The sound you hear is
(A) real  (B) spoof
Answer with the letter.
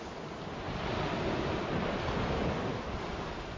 A